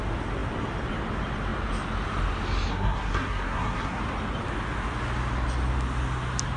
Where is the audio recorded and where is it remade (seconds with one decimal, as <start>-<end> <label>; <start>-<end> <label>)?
0.0-2.7 recorded; 2.7-4.0 remade; 4.0-6.6 recorded